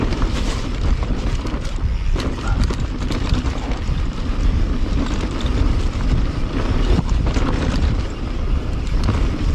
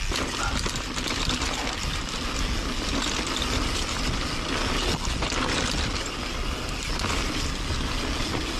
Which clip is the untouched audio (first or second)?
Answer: second